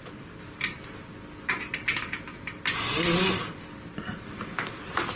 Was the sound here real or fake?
real